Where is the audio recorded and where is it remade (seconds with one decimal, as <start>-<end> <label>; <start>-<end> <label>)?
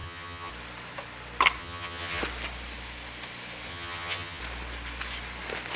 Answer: 0.0-0.5 remade; 0.5-1.6 recorded; 1.6-2.2 remade; 2.2-3.7 recorded; 3.7-4.4 remade; 4.4-5.8 recorded